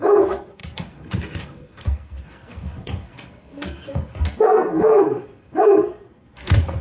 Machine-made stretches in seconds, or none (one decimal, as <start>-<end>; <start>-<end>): 0.0-6.8